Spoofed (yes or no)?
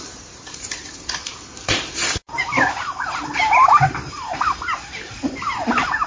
yes